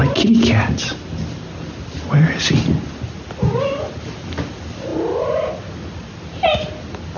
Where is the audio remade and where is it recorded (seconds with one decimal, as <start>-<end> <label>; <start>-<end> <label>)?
0.0-7.2 recorded